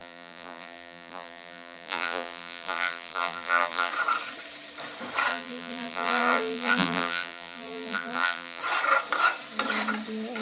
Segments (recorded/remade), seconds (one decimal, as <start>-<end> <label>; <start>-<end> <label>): 0.0-3.9 remade; 3.9-5.3 recorded; 5.3-8.6 remade; 8.6-10.4 recorded